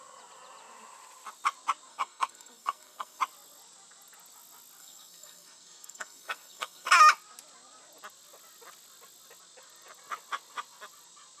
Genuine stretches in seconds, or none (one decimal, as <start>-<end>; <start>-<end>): 0.0-1.9; 3.2-4.8; 6.9-11.4